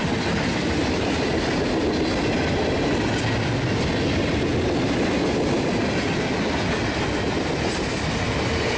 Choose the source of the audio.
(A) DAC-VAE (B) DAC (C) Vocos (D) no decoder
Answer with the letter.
D